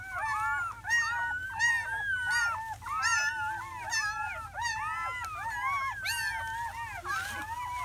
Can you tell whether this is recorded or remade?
recorded